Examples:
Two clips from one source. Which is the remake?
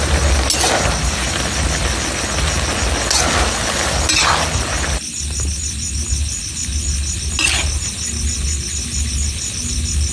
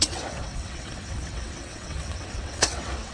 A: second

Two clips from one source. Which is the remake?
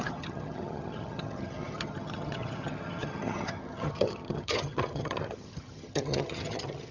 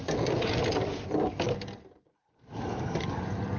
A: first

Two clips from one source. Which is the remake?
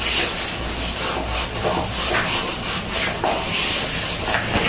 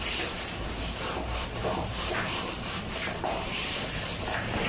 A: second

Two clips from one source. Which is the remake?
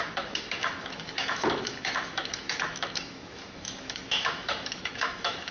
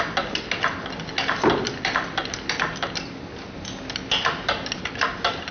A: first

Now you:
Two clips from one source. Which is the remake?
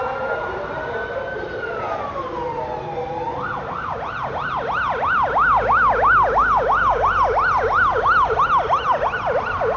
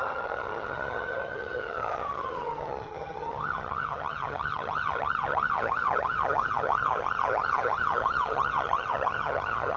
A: second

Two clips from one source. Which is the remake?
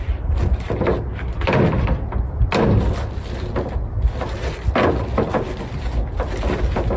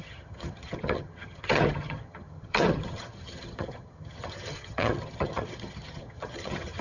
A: second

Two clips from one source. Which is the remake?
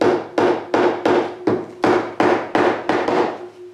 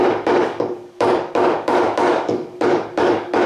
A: second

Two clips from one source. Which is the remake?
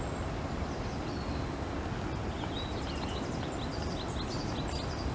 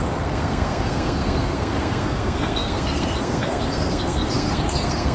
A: second